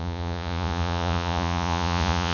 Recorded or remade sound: remade